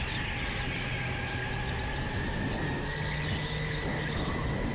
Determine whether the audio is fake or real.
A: real